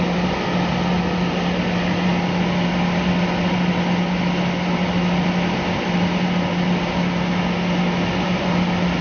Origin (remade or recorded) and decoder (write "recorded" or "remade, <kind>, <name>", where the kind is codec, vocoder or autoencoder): recorded